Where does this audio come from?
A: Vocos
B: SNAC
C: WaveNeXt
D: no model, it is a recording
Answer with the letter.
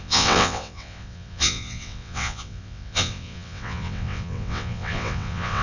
C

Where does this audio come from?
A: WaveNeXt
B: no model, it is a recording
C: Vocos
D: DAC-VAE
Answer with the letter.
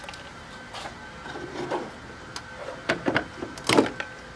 B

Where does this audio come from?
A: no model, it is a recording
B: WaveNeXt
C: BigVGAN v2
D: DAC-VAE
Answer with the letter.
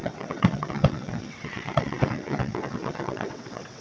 B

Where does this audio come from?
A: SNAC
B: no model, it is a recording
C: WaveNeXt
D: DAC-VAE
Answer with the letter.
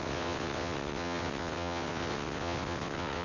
C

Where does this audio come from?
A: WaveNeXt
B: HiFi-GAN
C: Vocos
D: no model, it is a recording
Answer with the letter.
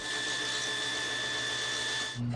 D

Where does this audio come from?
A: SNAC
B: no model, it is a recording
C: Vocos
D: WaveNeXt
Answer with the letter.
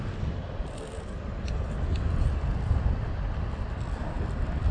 B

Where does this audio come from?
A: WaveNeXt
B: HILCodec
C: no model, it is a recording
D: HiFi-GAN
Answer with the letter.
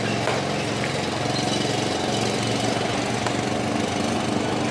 C